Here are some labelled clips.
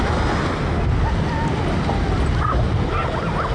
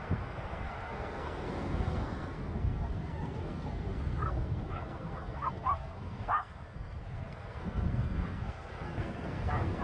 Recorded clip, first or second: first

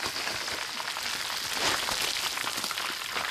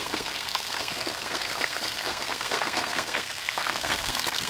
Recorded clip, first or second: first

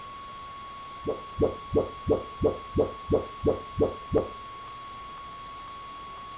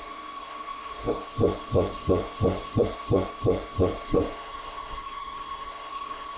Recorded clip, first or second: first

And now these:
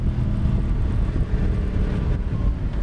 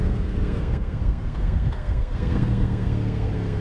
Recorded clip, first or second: first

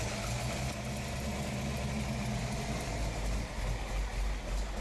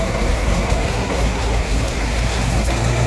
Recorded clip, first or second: first